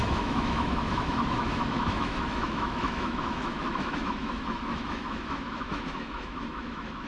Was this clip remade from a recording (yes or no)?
yes